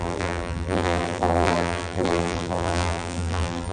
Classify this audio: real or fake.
fake